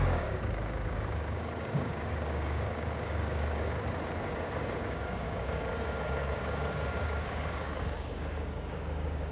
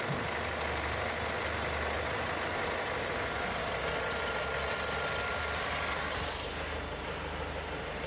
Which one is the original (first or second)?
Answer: second